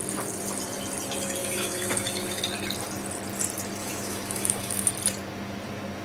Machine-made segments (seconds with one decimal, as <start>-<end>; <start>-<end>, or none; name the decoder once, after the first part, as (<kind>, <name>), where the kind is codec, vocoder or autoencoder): 1.4-2.4 (autoencoder, DAC-VAE); 3.8-4.9